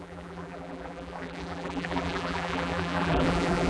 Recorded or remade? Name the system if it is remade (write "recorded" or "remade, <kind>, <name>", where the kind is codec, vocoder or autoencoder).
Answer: remade, vocoder, BigVGAN v2